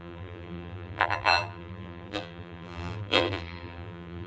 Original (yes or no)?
no